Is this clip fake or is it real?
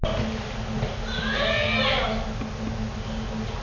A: real